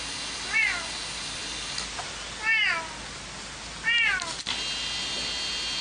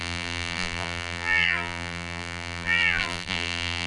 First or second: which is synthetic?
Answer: second